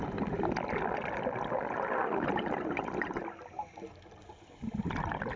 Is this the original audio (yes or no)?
yes